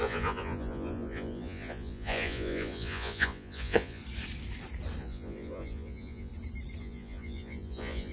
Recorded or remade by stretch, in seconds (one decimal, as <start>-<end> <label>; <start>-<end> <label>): 0.0-4.0 remade; 4.0-5.0 recorded; 5.0-6.3 remade; 6.3-6.8 recorded; 6.8-8.1 remade